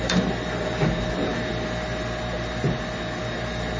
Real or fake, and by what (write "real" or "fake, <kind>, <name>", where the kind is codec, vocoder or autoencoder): real